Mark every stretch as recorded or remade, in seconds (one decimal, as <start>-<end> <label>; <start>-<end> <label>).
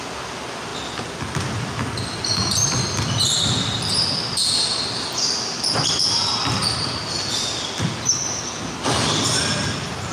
0.0-10.1 recorded